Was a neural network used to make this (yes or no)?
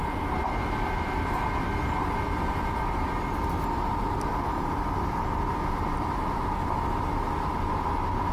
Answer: no